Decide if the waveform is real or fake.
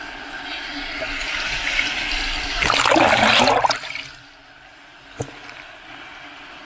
real